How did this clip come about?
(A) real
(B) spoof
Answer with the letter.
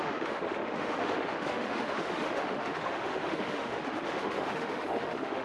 B